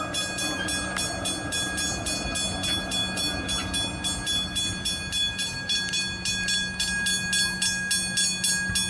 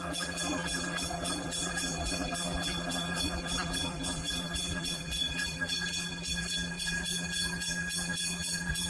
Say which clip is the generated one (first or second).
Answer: second